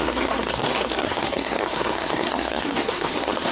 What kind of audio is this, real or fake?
fake